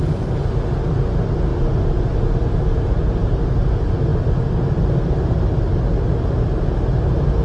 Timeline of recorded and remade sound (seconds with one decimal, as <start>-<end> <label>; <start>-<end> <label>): 0.0-7.4 recorded